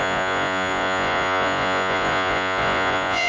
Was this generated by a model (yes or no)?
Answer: yes